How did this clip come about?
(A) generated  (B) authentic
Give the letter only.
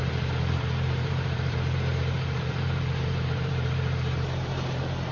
A